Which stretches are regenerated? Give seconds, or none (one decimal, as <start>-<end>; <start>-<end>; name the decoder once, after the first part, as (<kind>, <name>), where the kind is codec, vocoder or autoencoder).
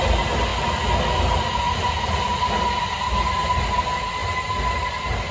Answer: none